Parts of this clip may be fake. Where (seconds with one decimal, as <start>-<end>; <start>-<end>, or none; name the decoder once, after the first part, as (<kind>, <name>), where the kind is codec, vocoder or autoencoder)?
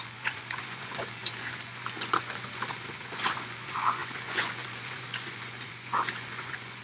0.0-6.8 (vocoder, Vocos)